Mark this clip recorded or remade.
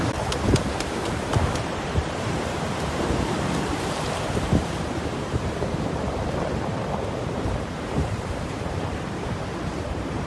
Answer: remade